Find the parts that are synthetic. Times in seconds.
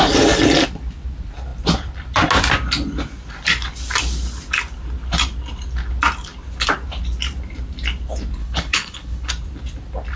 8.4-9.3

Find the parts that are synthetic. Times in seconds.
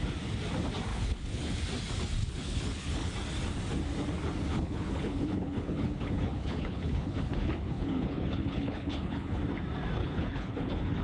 0.9-1.6; 2.2-3.1; 4.5-9.4; 10.0-11.0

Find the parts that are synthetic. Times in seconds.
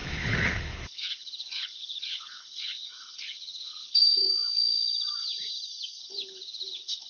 0.0-4.3; 6.0-7.1